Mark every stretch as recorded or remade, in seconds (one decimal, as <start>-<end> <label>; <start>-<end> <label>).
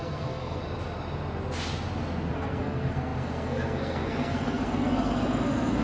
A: 0.0-0.6 remade; 0.6-2.3 recorded; 2.3-5.8 remade